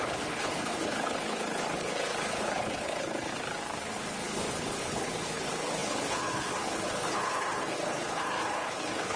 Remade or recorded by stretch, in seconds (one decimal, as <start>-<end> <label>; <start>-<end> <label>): 0.0-3.3 remade; 3.3-3.8 recorded; 3.8-9.2 remade